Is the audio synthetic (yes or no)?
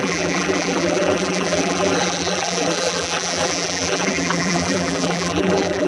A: yes